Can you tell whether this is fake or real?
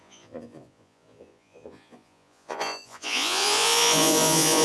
fake